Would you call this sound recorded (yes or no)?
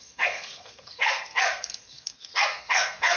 no